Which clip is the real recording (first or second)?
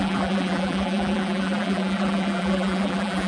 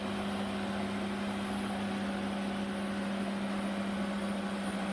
second